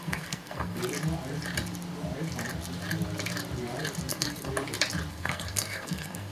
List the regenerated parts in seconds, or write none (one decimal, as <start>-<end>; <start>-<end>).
0.0-0.8; 4.1-4.5; 5.1-6.3